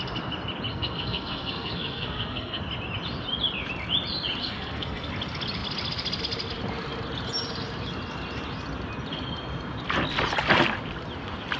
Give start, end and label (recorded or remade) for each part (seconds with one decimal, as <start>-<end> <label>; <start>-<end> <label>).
0.0-0.7 recorded; 0.7-2.6 remade; 2.6-4.4 recorded; 4.4-5.1 remade; 5.1-11.6 recorded